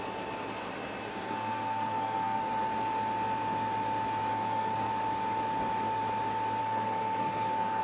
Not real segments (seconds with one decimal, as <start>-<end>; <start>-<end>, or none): 1.1-2.4; 4.3-4.9; 6.6-7.8

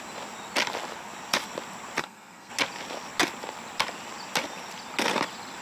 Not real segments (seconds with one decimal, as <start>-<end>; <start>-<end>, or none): 2.0-2.5

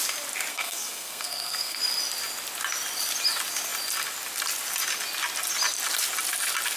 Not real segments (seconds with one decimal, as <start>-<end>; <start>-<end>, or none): 0.5-1.8

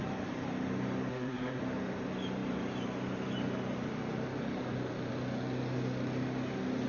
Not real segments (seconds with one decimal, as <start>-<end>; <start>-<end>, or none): 1.1-1.6

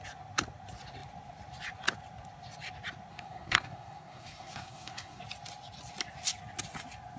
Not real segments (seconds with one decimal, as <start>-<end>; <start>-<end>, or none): 3.1-5.2

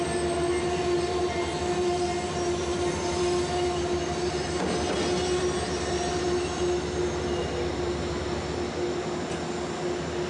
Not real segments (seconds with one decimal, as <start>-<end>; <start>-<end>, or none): none

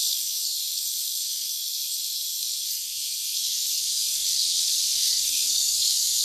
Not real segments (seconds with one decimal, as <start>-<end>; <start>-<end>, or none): 0.0-6.2